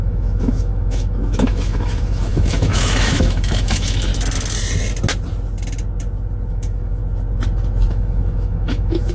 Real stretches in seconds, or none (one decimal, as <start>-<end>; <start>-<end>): 4.1-6.5; 7.0-7.9